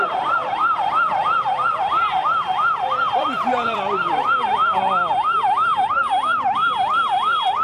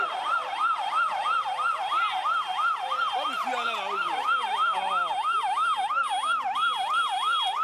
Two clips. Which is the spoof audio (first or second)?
first